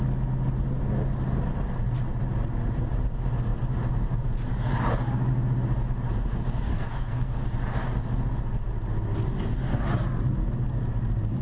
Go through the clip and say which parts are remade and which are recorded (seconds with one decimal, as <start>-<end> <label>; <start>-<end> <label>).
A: 0.0-6.7 recorded; 6.7-7.4 remade; 7.4-11.4 recorded